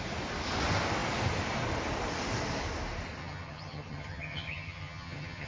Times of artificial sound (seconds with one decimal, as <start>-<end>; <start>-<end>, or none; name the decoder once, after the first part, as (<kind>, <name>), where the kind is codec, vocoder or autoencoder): 3.2-5.5 (vocoder, HiFi-GAN)